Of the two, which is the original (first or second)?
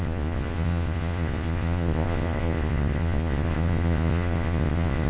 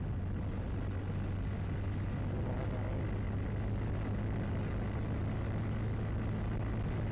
second